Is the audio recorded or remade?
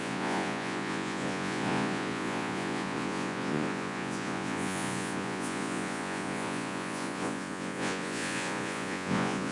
remade